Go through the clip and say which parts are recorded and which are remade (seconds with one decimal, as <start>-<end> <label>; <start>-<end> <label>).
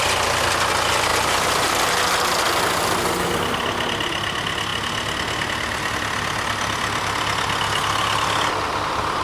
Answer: 0.0-9.2 recorded